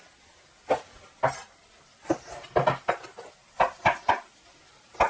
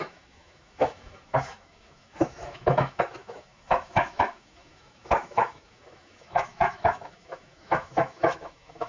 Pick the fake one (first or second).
second